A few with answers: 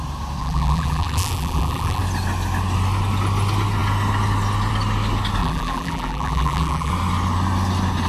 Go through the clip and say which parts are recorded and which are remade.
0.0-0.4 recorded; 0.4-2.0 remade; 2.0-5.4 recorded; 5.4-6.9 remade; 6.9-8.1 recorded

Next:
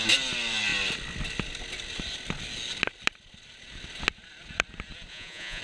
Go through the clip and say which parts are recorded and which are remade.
0.0-5.1 recorded; 5.1-5.6 remade